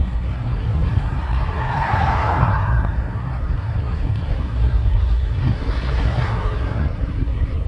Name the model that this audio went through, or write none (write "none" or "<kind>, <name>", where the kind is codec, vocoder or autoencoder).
codec, SNAC